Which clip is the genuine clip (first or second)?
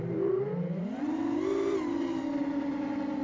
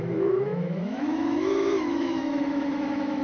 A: first